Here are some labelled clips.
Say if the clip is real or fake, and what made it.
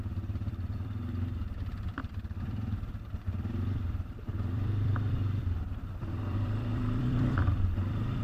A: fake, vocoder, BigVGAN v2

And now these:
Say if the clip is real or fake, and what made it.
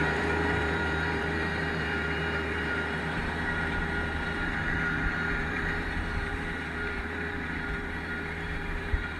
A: fake, vocoder, BigVGAN v2